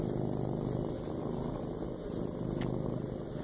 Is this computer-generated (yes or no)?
no